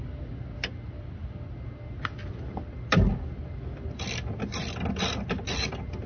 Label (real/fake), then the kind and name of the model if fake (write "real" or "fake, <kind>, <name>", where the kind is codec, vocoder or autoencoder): real